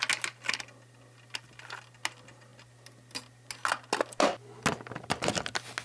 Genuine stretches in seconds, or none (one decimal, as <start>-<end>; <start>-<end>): 0.0-5.8